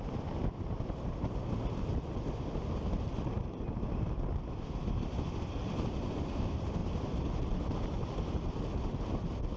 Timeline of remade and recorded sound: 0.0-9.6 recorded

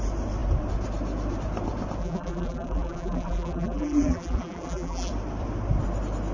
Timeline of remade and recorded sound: 0.0-2.0 recorded; 2.0-5.1 remade; 5.1-6.3 recorded

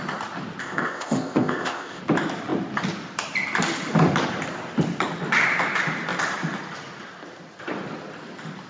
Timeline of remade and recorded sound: 0.0-0.6 recorded; 0.6-2.0 remade; 2.0-8.7 recorded